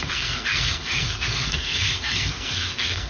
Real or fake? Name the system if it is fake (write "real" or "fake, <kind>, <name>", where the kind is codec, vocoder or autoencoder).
fake, codec, SNAC